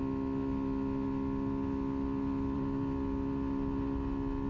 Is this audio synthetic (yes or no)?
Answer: no